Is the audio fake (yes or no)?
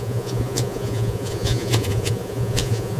yes